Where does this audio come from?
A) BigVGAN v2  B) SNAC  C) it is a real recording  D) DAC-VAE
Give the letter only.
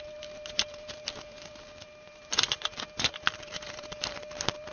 A